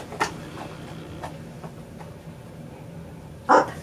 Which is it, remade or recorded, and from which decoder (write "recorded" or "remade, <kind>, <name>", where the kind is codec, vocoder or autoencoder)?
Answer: recorded